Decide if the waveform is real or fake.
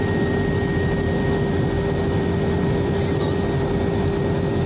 real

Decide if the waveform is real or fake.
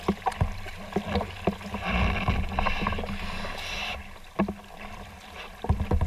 real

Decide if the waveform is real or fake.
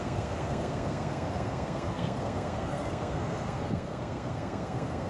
fake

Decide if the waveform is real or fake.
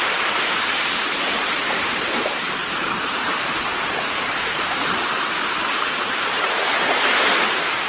fake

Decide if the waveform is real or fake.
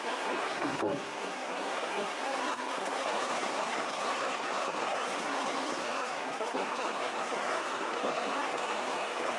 fake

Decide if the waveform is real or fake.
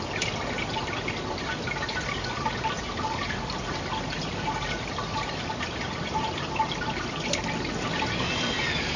real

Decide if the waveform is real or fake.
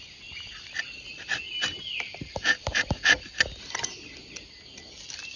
real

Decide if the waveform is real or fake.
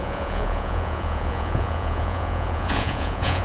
fake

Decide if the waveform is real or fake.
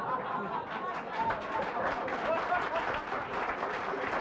real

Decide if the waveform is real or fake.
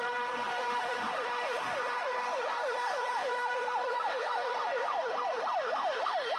fake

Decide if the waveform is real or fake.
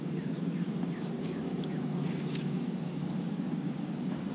fake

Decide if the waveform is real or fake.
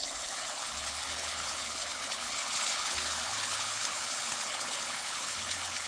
fake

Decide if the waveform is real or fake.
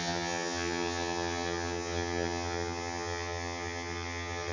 fake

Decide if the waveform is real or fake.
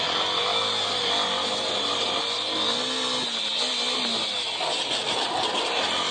real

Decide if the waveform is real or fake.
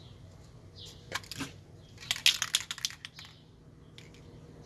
real